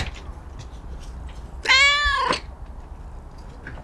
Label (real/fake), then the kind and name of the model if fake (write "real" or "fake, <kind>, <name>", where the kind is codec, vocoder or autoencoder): real